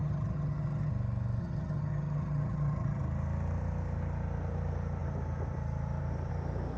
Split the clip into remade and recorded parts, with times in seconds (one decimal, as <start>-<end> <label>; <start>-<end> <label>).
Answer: 0.0-0.9 remade; 0.9-1.4 recorded; 1.4-3.0 remade; 3.0-6.8 recorded